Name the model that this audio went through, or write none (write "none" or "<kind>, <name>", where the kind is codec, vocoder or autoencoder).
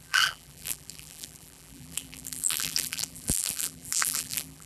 vocoder, BigVGAN v2